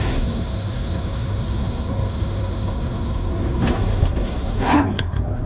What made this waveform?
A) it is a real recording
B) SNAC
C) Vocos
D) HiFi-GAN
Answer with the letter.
B